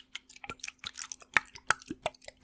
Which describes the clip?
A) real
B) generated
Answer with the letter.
A